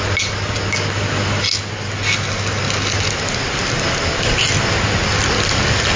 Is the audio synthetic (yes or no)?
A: no